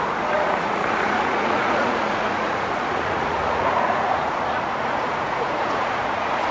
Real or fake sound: fake